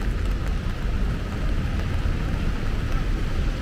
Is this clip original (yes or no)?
yes